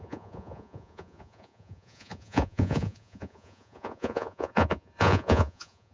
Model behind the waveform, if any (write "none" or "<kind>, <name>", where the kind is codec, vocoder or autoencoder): vocoder, Vocos